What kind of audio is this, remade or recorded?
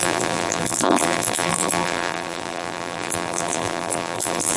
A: remade